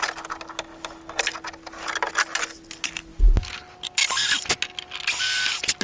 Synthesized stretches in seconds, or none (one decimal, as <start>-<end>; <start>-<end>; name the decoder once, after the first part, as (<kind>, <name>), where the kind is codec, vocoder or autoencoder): none